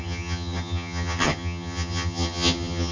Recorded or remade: remade